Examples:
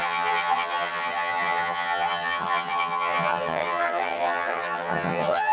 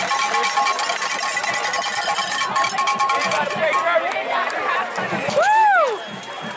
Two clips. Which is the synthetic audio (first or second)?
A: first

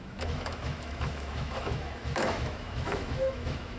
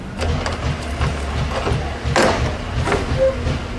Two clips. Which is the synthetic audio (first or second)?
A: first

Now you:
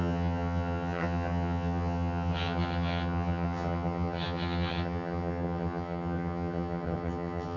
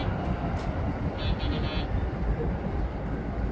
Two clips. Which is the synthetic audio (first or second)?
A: first